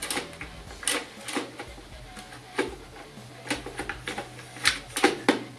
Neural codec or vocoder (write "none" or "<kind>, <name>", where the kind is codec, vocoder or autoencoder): none